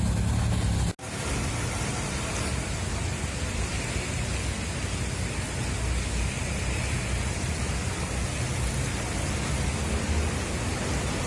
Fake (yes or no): no